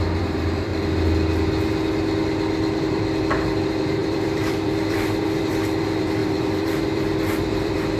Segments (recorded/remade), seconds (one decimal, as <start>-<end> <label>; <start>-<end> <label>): 0.0-0.7 remade; 0.7-2.8 recorded; 2.8-8.0 remade